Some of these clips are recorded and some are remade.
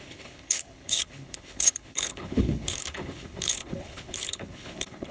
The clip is remade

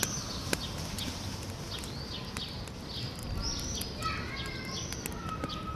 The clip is recorded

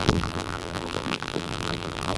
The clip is remade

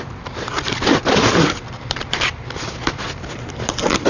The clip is recorded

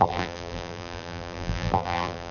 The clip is remade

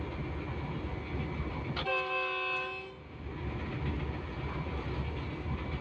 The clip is recorded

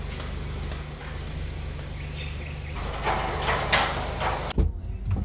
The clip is recorded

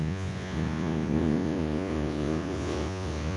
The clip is remade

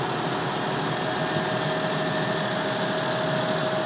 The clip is recorded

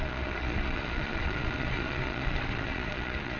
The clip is remade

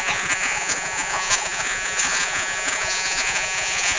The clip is remade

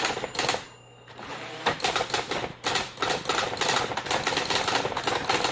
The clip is recorded